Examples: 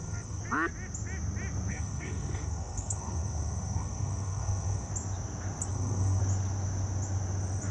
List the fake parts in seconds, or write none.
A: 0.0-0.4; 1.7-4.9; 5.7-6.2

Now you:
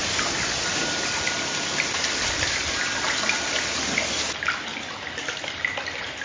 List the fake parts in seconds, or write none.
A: 0.0-3.7; 4.7-5.5

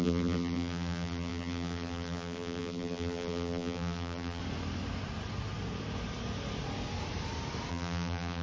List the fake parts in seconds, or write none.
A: 0.0-4.4; 7.7-8.4

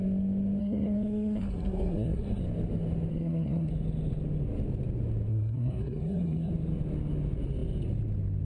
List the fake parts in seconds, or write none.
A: 0.6-2.4; 3.1-3.7; 5.3-6.5

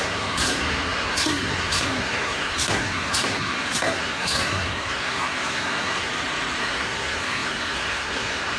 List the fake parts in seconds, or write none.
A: 0.0-6.1; 6.6-8.6

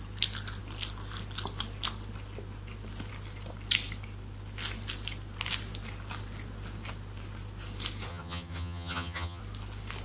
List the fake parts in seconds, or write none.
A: 8.1-9.4